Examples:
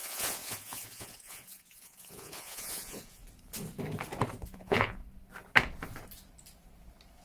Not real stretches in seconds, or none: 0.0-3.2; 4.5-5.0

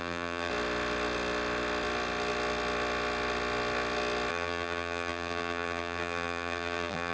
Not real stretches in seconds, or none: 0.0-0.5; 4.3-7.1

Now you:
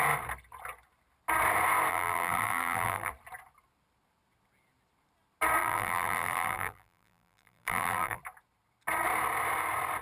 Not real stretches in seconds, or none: 1.9-3.1; 5.6-8.2

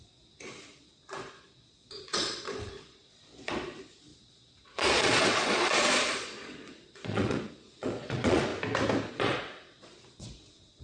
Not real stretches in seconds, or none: 0.0-8.5; 9.1-10.8

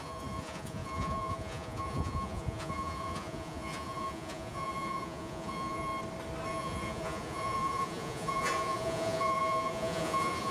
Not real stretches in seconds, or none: 0.0-5.9; 6.5-10.5

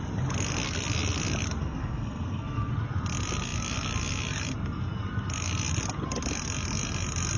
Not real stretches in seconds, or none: 1.6-2.7

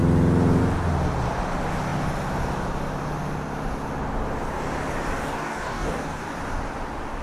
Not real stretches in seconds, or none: 5.2-6.3

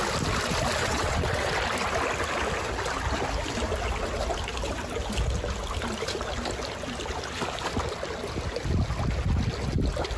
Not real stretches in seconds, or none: 0.8-1.5